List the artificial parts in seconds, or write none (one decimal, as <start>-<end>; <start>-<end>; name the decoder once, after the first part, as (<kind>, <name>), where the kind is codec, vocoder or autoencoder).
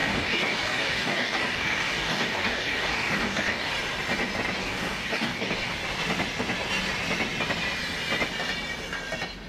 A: 0.0-3.7 (codec, DAC); 4.6-5.7